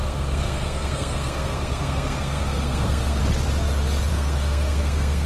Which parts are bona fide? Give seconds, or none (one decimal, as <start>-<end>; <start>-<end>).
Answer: 3.2-4.1

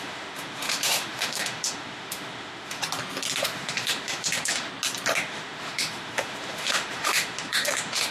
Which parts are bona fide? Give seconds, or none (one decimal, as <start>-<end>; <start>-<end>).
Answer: 2.8-3.4; 4.7-5.2

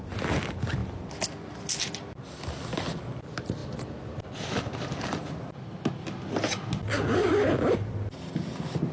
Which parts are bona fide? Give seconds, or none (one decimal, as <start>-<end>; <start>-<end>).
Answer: 0.0-8.9

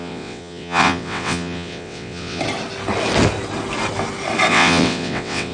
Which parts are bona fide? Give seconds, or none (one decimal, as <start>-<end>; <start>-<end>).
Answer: 2.4-4.5

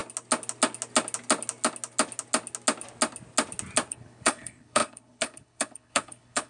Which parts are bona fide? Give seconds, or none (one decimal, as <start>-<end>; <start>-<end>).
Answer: 0.0-3.9

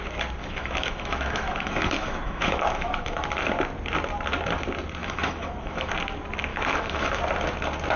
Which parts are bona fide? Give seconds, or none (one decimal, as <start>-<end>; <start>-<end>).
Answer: 0.0-0.4; 3.3-5.0; 5.9-6.5; 7.2-8.0

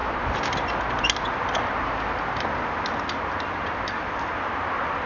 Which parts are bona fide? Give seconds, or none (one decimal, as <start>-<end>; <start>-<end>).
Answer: 0.0-5.1

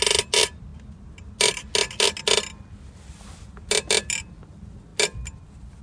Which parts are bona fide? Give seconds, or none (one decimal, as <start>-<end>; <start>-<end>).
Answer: 0.0-5.8